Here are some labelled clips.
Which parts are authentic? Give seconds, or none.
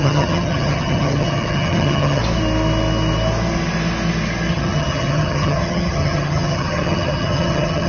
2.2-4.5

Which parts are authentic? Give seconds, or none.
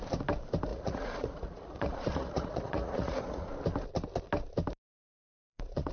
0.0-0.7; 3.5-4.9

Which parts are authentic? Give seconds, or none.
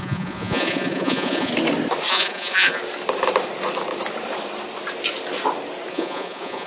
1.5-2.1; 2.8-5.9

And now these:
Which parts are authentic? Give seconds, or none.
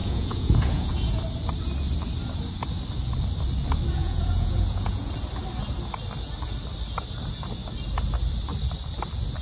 1.2-4.0; 5.1-9.4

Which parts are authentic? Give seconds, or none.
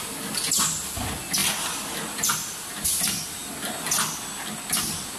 0.0-5.2